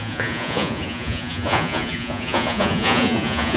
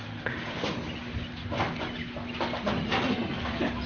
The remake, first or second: first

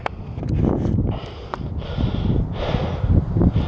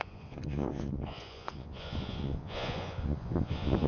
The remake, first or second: second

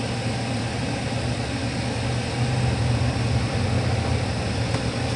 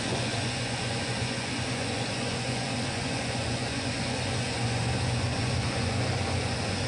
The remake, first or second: second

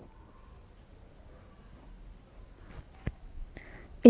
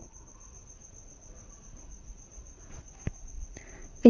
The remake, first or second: second